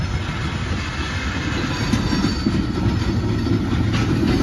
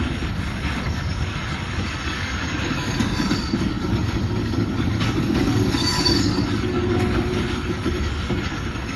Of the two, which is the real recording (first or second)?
first